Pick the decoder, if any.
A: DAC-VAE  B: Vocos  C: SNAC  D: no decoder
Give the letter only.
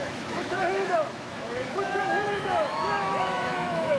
A